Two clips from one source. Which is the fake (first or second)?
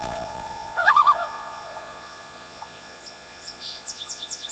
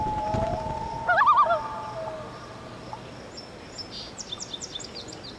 first